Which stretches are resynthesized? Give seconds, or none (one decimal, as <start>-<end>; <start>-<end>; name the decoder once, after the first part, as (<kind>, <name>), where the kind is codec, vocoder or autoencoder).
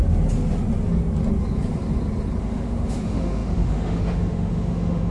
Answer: 2.4-5.1 (autoencoder, DAC-VAE)